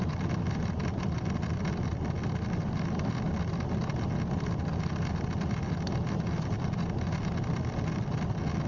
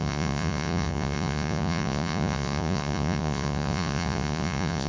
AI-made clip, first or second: second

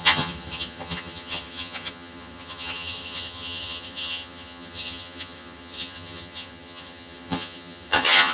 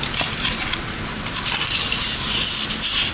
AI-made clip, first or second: first